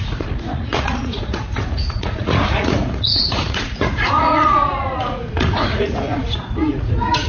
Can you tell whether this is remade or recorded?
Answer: remade